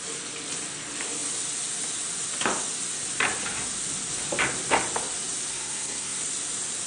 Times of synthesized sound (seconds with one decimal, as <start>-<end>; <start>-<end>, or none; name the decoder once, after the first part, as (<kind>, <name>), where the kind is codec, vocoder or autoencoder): 5.5-6.2 (codec, SNAC)